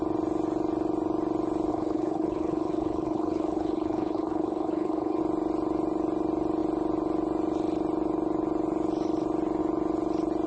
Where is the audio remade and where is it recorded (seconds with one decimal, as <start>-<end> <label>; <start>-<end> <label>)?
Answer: 0.0-1.7 recorded; 1.7-5.2 remade; 5.2-10.5 recorded